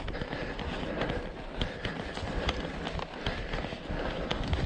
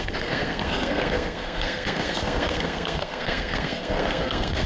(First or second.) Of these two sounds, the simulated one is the second